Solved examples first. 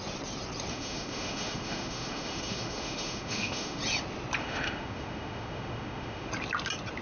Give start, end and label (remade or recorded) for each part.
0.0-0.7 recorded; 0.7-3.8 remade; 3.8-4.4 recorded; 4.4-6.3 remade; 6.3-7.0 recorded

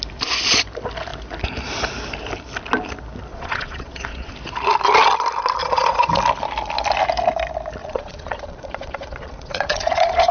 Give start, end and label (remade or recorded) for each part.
0.0-3.3 recorded; 3.3-4.3 remade; 4.3-5.6 recorded; 5.6-6.1 remade; 6.1-7.8 recorded; 7.8-10.3 remade